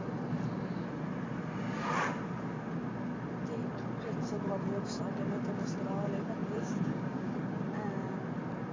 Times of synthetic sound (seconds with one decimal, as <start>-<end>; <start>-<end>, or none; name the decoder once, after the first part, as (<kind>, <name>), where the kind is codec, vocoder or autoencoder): 6.4-7.4 (codec, DAC)

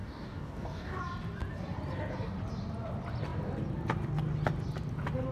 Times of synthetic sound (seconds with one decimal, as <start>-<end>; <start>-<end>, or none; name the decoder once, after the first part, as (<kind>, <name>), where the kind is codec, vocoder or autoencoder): 0.0-1.0 (codec, DAC)

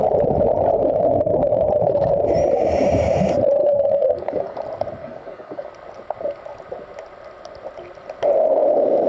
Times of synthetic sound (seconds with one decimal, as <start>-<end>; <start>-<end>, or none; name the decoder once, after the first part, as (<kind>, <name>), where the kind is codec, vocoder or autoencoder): 0.7-1.7 (codec, DAC); 3.6-4.6; 5.0-5.7

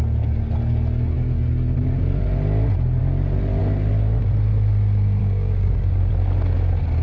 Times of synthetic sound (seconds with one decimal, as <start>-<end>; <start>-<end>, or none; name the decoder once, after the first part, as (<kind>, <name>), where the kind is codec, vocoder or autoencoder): 5.2-6.1 (codec, DAC)

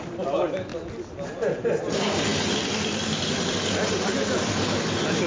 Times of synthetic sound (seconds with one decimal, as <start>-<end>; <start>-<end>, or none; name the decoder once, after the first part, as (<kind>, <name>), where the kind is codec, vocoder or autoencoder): none

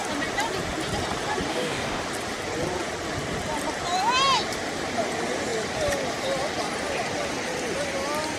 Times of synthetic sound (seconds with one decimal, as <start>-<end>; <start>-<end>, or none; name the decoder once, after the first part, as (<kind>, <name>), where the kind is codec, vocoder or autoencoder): 1.5-2.0 (codec, DAC)

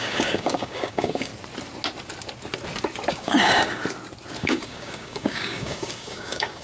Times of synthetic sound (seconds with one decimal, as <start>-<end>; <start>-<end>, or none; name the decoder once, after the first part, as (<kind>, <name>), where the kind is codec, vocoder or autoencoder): 0.0-1.3 (codec, DAC); 3.1-3.8; 4.4-6.6

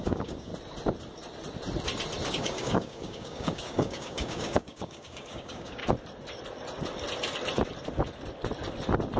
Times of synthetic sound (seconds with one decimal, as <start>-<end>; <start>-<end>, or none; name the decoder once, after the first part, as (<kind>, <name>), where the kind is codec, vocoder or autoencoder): 0.0-0.5 (codec, DAC); 2.3-5.8